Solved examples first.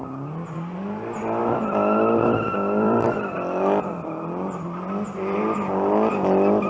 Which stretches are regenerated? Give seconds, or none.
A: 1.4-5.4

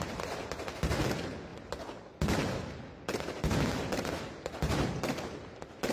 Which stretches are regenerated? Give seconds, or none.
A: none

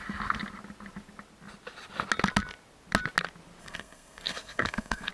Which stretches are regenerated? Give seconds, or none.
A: 3.6-5.1

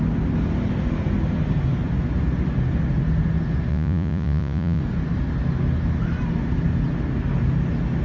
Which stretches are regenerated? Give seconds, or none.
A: 3.7-4.8

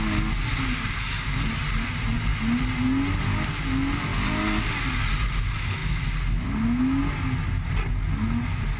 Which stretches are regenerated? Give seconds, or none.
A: none

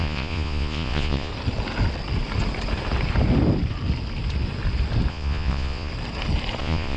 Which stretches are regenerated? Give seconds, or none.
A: 0.0-1.3; 5.1-5.9; 6.6-7.0

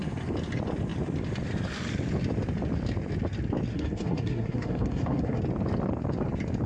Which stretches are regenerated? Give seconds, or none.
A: 3.7-5.4

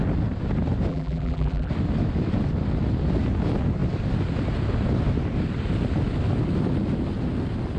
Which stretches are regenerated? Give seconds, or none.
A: 0.9-1.7